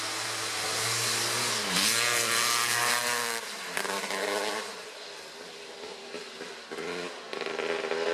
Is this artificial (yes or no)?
no